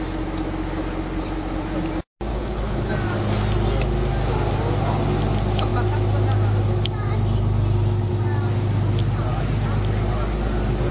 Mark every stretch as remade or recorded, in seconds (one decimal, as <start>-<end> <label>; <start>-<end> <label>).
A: 0.0-2.3 recorded; 2.3-2.9 remade; 2.9-10.9 recorded